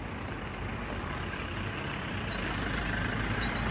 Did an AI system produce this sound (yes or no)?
no